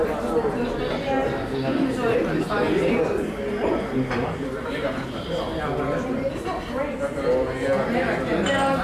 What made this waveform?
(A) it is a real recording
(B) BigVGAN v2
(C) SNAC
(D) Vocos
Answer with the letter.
A